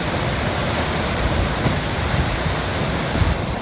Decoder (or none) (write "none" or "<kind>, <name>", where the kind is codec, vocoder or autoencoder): none